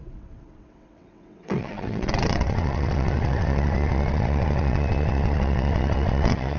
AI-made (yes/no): yes